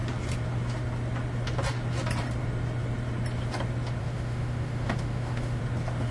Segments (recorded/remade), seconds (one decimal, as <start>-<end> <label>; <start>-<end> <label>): 0.0-4.0 recorded; 4.0-5.6 remade; 5.6-6.1 recorded